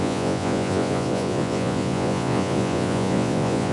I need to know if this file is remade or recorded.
remade